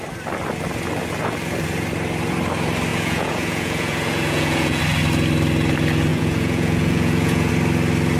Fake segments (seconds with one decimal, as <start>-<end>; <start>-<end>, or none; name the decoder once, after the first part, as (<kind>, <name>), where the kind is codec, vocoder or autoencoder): 2.9-4.8 (vocoder, Vocos); 6.1-7.5